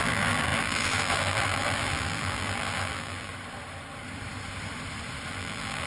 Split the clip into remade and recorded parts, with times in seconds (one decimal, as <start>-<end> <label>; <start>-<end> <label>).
0.0-3.3 remade; 3.3-5.3 recorded; 5.3-5.9 remade